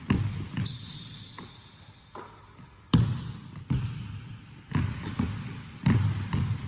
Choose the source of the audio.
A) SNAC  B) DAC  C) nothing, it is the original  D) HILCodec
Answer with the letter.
C